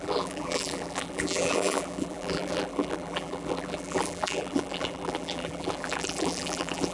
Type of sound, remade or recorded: remade